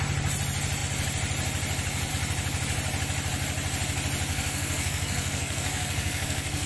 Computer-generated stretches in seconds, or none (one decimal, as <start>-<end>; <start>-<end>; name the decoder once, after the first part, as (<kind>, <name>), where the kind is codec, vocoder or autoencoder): 4.3-6.7 (codec, SNAC)